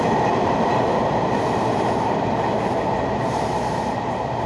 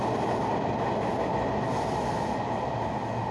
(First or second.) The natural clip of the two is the second